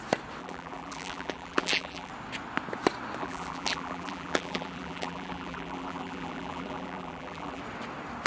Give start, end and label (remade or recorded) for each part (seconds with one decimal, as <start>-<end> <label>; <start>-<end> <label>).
0.0-0.4 recorded; 0.4-2.1 remade; 2.1-3.2 recorded; 3.2-7.6 remade; 7.6-8.3 recorded